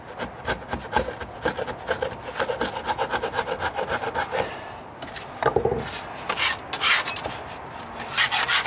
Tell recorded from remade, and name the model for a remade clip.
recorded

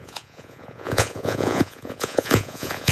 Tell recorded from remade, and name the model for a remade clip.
remade, vocoder, Vocos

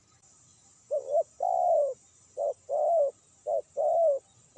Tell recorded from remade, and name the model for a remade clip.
recorded